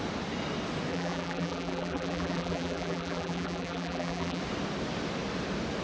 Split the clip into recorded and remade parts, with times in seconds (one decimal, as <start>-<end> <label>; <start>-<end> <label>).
0.0-0.9 recorded; 0.9-4.4 remade; 4.4-5.8 recorded